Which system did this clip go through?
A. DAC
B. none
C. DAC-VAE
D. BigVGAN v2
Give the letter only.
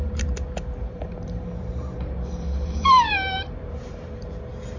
D